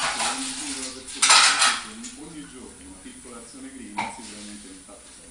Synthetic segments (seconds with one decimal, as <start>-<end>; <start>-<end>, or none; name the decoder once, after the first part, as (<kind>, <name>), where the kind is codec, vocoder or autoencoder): none